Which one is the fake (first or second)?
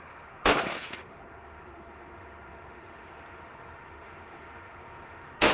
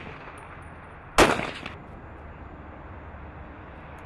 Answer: first